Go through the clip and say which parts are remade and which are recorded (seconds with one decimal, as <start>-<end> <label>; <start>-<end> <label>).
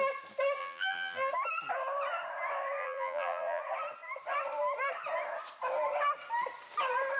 0.0-0.6 recorded; 0.6-1.3 remade; 1.3-2.8 recorded; 2.8-3.6 remade; 3.6-7.2 recorded